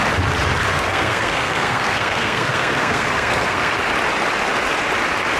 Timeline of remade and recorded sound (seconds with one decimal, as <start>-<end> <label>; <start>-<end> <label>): 0.0-0.6 recorded; 0.6-3.8 remade; 3.8-5.4 recorded